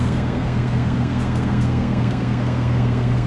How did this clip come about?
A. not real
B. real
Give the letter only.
A